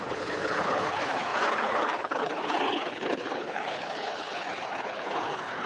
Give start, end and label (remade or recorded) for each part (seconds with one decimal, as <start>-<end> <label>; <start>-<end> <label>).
0.0-5.7 remade